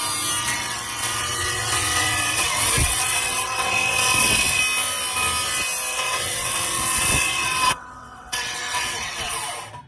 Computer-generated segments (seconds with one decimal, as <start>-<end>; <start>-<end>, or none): 0.4-4.6; 5.9-9.3